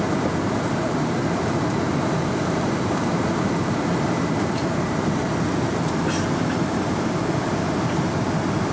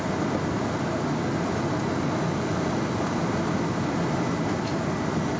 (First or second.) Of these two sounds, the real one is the second